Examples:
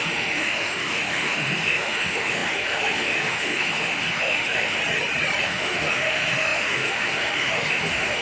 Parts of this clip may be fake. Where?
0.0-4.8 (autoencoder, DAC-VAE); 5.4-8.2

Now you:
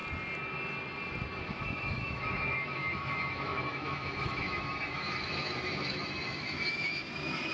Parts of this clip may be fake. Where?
1.4-7.5 (autoencoder, DAC-VAE)

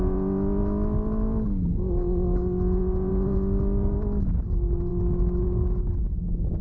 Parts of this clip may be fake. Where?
4.9-5.4 (autoencoder, DAC-VAE)

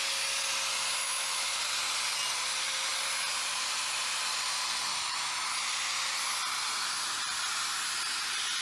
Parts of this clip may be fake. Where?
1.0-1.6 (autoencoder, DAC-VAE); 4.9-5.5

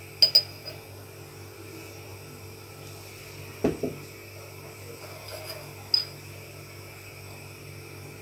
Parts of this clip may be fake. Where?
none

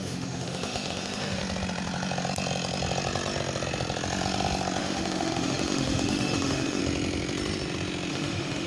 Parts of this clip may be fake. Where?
0.0-1.4 (autoencoder, DAC-VAE); 4.8-6.8; 8.1-8.7